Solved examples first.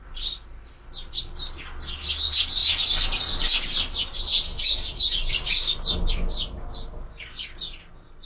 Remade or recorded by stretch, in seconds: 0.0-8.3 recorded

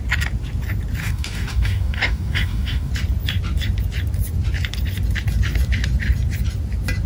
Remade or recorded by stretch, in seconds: 0.0-1.0 recorded; 1.0-2.9 remade; 2.9-7.1 recorded

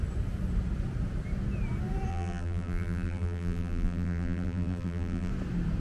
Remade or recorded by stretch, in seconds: 0.0-2.1 recorded; 2.1-5.3 remade; 5.3-5.8 recorded

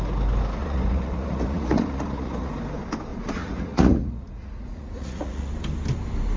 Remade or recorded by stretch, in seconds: 0.0-0.6 recorded; 0.6-2.5 remade; 2.5-3.1 recorded; 3.1-5.5 remade; 5.5-6.4 recorded

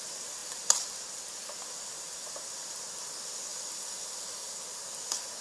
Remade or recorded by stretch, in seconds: 0.0-0.4 recorded; 0.4-2.8 remade; 2.8-3.5 recorded; 3.5-4.6 remade; 4.6-5.4 recorded

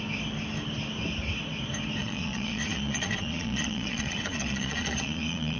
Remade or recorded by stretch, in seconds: 0.0-2.0 recorded; 2.0-5.6 remade

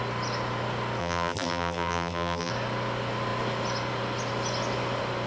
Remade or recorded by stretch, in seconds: 0.0-1.0 recorded; 1.0-2.5 remade; 2.5-5.3 recorded